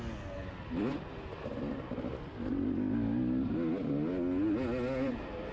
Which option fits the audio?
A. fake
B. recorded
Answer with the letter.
B